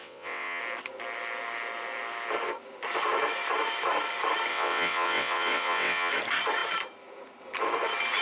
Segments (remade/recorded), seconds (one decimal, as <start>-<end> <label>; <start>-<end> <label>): 0.0-0.6 remade; 0.6-4.5 recorded; 4.5-6.1 remade; 6.1-8.2 recorded